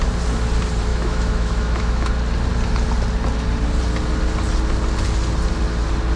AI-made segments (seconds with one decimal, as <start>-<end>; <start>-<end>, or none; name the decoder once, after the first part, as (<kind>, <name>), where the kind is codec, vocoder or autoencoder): 0.9-2.1 (autoencoder, DAC-VAE)